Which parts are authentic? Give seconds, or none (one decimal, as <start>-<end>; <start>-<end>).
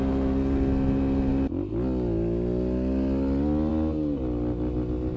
0.0-5.2